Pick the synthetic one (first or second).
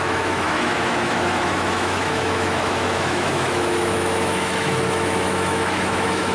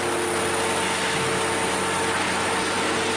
first